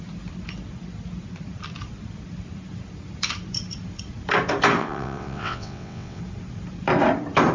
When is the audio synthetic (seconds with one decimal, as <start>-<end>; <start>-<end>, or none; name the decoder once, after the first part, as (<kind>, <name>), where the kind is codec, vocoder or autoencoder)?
4.8-6.2 (vocoder, WaveNeXt)